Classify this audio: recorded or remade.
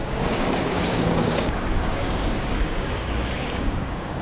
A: remade